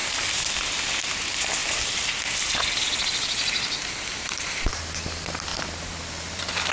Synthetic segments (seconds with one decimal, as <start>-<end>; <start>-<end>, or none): 0.0-0.5; 1.6-4.6; 5.5-6.7

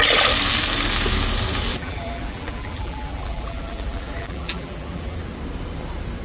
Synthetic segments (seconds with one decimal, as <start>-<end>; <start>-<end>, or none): 1.7-5.2

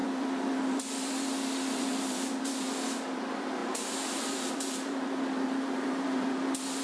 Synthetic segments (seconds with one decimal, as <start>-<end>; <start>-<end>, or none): 0.0-6.8

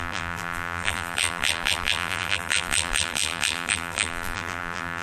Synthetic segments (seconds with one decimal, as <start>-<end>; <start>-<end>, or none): 0.0-5.0

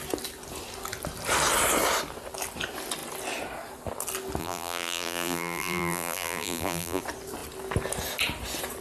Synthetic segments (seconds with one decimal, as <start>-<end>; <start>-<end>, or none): 4.4-7.0